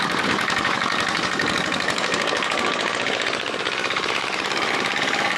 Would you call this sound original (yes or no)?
no